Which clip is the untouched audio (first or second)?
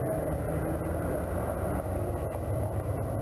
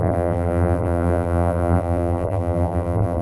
first